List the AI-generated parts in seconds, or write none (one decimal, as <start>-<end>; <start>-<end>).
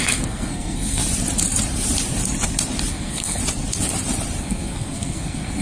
0.0-1.0; 2.9-3.4; 4.4-5.6